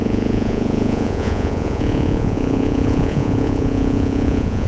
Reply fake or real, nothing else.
fake